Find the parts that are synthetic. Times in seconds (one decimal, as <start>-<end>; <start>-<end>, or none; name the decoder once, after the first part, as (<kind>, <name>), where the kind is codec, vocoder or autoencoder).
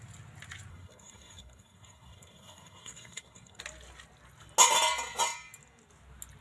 0.7-3.6 (codec, SNAC)